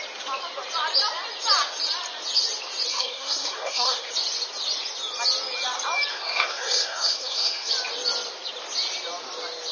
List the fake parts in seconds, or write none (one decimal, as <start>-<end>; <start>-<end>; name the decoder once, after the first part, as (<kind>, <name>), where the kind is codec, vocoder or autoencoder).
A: 2.9-4.1 (codec, SNAC); 6.1-7.7